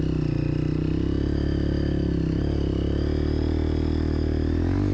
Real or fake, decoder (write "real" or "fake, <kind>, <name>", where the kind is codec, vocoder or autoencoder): real